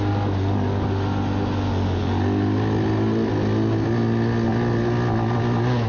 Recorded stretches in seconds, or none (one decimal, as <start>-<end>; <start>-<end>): 0.0-5.9